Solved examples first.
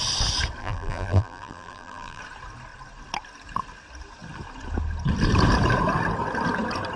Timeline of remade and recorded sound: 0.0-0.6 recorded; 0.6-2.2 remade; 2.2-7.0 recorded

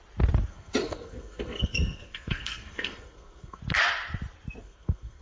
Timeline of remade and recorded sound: 0.0-0.5 recorded; 0.5-3.6 remade; 3.6-4.6 recorded; 4.6-5.2 remade